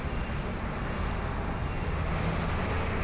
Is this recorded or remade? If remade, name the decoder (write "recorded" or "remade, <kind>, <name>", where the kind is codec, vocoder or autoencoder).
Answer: recorded